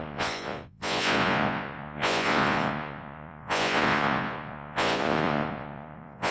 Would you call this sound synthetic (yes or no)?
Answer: yes